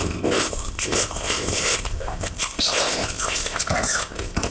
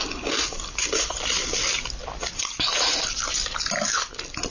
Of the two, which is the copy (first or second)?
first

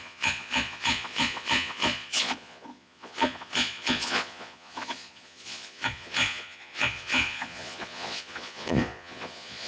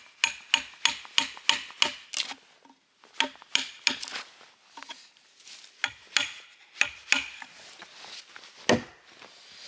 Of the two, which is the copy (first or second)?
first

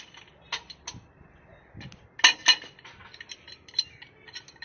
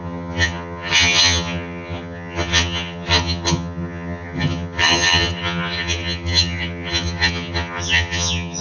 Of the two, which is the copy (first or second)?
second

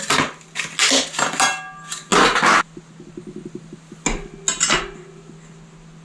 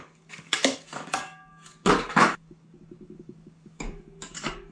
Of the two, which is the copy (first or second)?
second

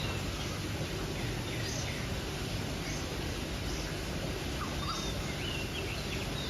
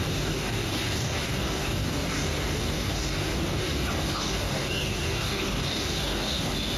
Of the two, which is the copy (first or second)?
second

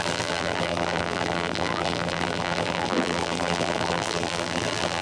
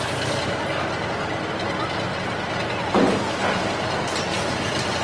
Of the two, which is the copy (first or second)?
first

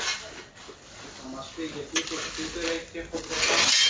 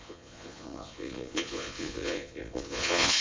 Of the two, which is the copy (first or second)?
second